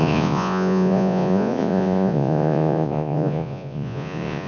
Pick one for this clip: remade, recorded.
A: remade